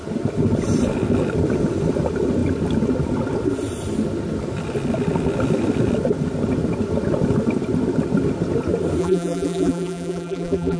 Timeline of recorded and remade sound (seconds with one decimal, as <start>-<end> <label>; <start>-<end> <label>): 0.0-9.0 recorded; 9.0-10.8 remade